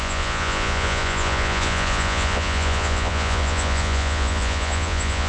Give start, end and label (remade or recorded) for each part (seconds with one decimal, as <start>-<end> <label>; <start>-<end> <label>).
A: 0.0-5.3 remade